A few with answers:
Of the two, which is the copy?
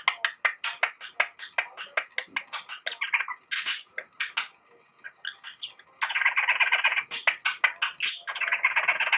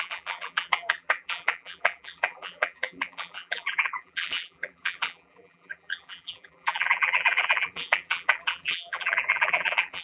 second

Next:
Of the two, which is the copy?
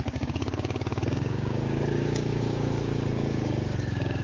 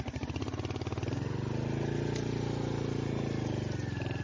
first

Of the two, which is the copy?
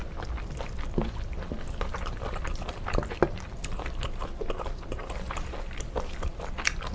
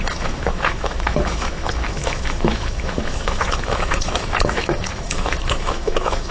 second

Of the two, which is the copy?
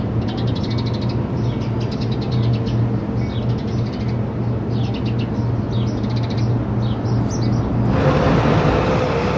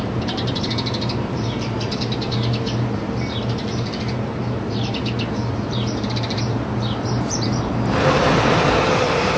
second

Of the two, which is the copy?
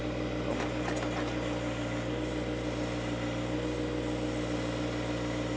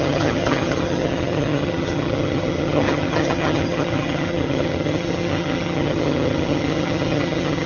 second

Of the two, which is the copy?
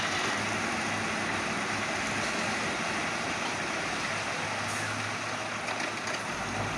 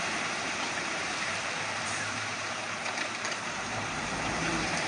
second